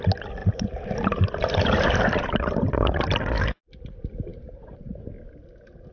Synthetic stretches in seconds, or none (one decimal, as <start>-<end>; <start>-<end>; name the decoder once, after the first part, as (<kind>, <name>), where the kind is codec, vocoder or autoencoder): 0.4-3.2 (vocoder, BigVGAN v2); 4.3-5.1